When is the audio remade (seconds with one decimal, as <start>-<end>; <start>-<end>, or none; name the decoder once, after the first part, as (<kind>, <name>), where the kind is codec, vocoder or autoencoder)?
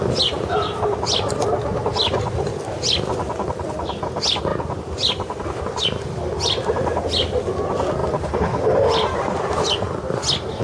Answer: none